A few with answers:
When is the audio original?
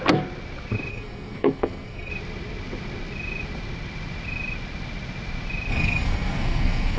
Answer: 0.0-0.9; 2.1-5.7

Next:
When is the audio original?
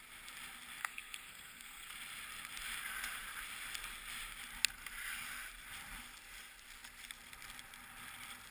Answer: 0.0-0.8; 1.9-8.5